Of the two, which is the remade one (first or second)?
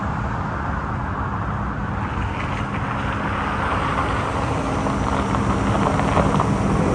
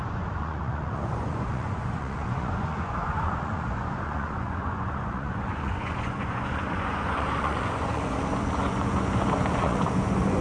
second